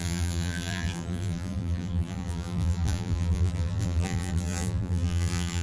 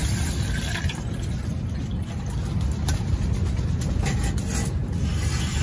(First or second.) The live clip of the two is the second